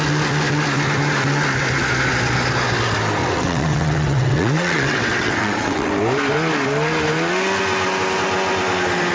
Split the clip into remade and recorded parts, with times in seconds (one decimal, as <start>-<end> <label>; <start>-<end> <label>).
0.0-3.2 recorded; 3.2-5.9 remade; 5.9-9.1 recorded